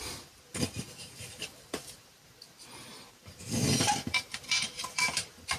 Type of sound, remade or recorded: remade